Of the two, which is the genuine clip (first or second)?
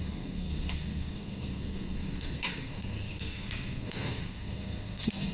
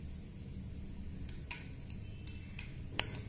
second